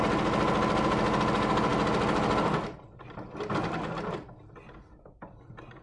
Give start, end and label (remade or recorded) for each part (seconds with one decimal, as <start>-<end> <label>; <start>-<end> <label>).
0.0-5.8 recorded